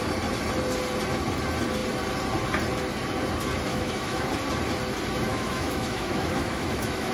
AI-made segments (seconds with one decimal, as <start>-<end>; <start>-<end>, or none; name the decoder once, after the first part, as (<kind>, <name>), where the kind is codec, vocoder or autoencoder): 3.7-4.3 (autoencoder, DAC-VAE); 5.3-7.1